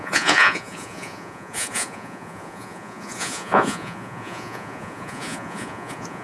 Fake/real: fake